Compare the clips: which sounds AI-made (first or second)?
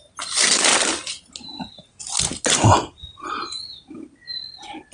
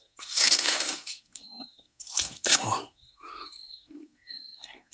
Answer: second